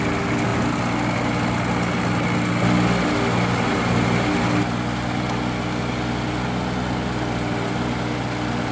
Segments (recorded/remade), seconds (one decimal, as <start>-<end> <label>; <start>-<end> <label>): 0.0-8.7 recorded